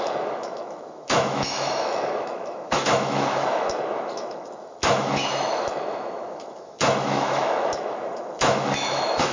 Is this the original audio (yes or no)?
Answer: no